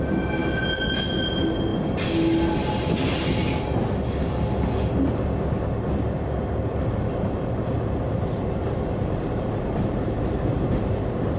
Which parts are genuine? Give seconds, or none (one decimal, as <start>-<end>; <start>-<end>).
0.0-6.7